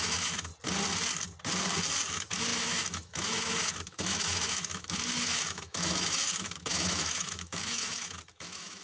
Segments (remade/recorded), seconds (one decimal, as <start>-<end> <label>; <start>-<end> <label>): 0.0-0.5 remade; 0.5-2.1 recorded; 2.1-8.8 remade